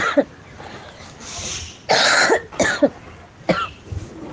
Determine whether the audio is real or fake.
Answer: real